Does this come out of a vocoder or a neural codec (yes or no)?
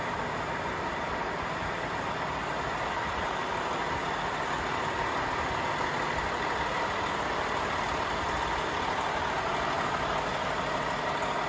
no